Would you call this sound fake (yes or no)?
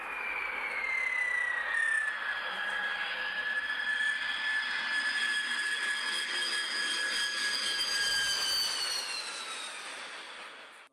no